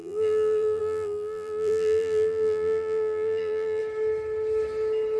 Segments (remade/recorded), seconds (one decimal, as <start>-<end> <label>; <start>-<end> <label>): 0.0-3.8 remade; 3.8-5.2 recorded